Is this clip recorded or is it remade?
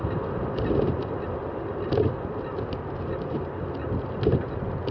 recorded